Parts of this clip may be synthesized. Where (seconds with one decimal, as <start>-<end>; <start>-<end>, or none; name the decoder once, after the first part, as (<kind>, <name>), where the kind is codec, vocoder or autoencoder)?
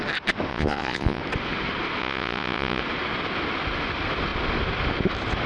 0.5-1.2 (vocoder, Vocos); 2.0-2.8